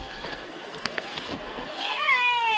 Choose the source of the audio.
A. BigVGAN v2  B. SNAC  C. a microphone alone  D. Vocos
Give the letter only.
B